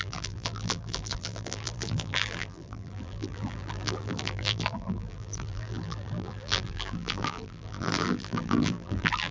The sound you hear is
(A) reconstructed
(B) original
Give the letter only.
A